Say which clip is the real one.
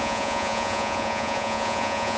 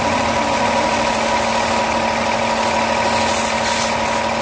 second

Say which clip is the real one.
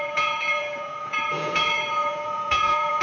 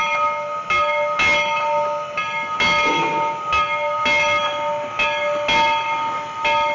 second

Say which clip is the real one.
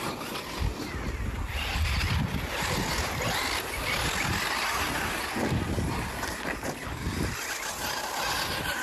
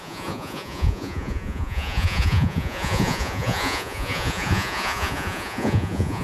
first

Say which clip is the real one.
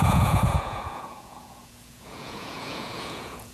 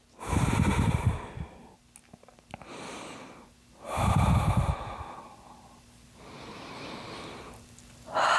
second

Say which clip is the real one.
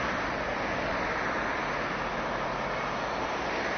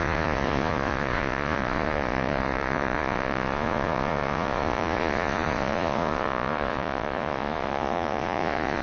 first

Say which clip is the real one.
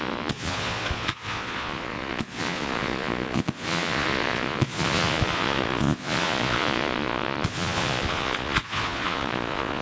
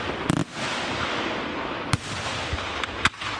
second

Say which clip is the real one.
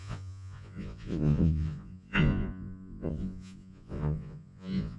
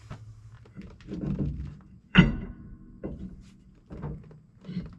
second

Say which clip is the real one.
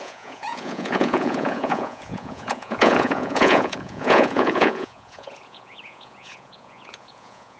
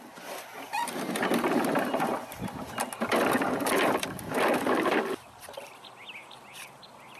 second